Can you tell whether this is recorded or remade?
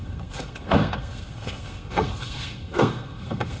remade